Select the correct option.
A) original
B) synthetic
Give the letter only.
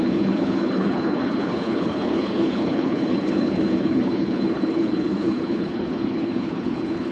B